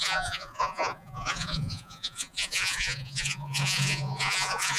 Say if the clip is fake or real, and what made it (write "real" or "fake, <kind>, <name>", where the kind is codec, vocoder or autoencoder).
fake, vocoder, Vocos